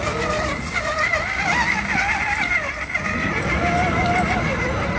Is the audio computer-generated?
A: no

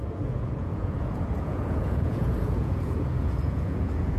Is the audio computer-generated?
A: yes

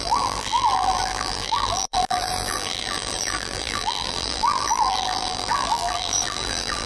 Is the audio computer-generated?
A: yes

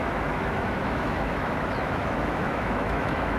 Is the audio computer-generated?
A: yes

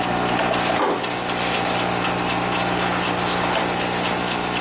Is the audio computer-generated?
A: no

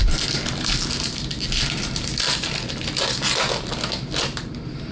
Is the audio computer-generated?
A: no